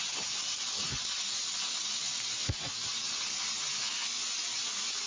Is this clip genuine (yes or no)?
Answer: yes